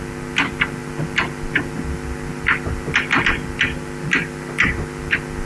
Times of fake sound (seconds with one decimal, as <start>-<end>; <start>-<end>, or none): none